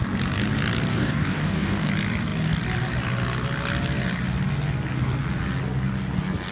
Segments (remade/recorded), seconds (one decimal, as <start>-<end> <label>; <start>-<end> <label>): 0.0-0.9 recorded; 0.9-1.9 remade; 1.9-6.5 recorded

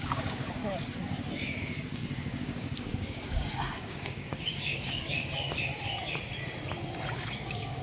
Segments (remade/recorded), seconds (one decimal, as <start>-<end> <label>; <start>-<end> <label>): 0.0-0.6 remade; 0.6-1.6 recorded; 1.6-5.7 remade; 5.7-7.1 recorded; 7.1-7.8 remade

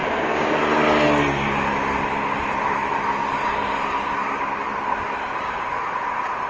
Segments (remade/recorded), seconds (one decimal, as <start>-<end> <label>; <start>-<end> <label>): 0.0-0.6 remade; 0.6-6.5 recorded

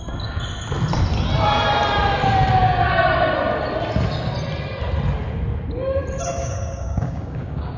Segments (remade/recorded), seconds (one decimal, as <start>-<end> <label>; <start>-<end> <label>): 0.0-6.4 recorded; 6.4-7.8 remade